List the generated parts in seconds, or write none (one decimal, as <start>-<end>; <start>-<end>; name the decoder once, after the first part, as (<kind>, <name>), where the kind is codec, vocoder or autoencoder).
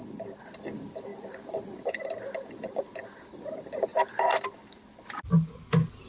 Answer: none